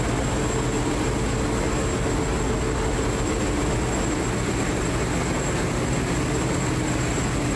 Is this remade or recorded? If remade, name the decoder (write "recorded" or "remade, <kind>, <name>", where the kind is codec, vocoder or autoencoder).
recorded